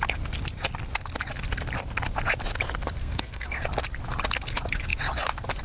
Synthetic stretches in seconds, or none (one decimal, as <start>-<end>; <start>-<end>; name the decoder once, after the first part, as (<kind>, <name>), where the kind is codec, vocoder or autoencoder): 3.0-3.6 (codec, SNAC)